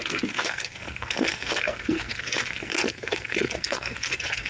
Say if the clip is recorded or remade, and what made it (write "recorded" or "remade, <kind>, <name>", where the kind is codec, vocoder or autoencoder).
remade, codec, SNAC